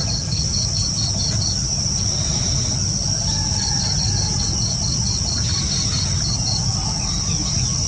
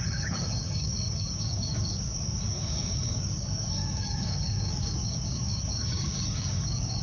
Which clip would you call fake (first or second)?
second